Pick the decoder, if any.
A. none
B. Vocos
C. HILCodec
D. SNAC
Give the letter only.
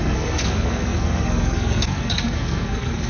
D